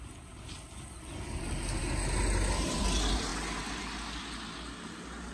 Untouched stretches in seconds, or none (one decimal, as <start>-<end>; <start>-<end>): 0.0-5.3